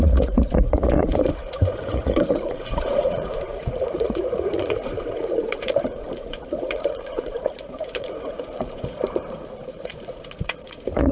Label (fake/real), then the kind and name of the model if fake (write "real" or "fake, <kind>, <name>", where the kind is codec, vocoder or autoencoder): fake, vocoder, Vocos